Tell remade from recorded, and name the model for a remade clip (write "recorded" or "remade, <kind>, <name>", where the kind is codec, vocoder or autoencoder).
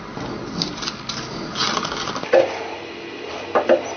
recorded